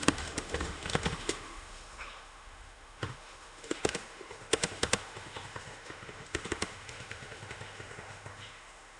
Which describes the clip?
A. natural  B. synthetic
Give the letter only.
B